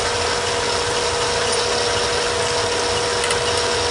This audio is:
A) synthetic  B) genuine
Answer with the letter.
B